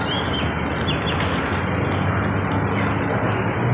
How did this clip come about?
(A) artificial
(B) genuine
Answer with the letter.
B